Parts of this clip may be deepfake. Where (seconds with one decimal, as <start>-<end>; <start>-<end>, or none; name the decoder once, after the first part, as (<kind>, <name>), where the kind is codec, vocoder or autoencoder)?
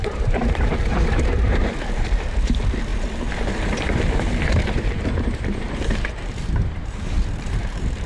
0.0-8.1 (vocoder, BigVGAN v2)